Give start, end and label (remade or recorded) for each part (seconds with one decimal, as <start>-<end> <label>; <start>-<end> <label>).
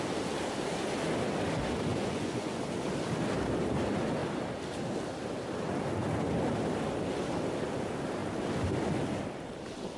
0.0-1.9 recorded; 1.9-2.6 remade; 2.6-10.0 recorded